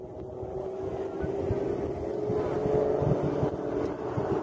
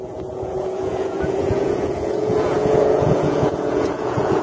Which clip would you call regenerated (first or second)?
second